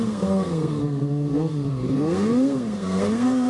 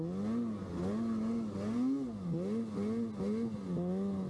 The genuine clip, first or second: second